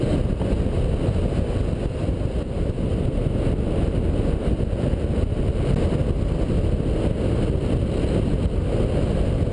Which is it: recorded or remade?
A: recorded